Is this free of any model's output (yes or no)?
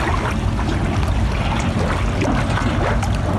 yes